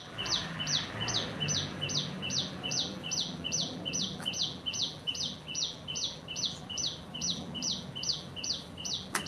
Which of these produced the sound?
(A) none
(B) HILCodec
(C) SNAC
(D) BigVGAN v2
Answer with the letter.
D